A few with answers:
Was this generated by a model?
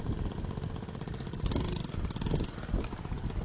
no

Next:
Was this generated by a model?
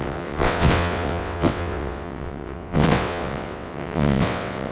yes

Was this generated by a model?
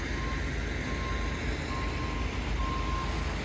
no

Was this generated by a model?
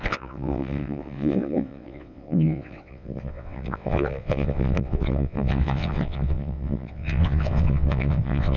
yes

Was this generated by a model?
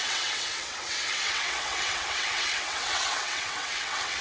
yes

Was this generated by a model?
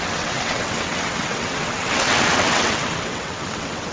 yes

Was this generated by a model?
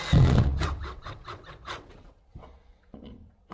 yes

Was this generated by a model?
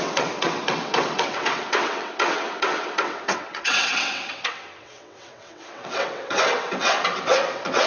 yes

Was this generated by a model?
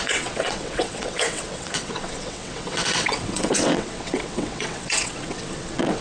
yes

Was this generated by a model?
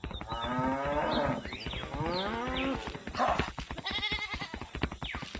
no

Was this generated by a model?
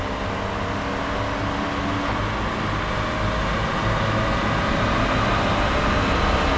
no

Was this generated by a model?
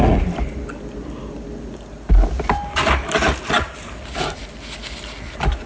no